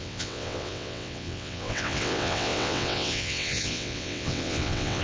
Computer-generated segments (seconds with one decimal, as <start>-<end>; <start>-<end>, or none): 0.0-5.0